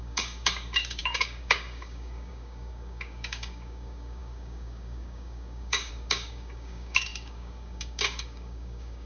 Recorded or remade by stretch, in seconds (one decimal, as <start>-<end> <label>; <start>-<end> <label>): 0.0-9.1 remade